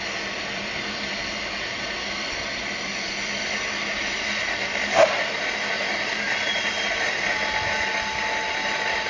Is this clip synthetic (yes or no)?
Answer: no